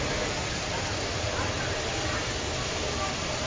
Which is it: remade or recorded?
recorded